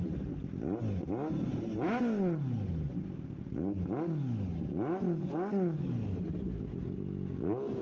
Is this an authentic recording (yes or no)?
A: yes